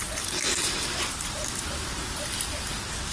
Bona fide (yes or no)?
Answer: yes